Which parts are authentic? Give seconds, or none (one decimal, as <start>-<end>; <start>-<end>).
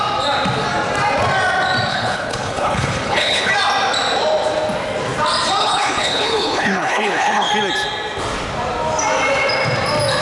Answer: 0.0-1.9; 3.5-5.6; 7.5-10.2